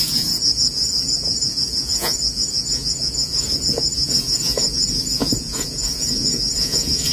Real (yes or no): no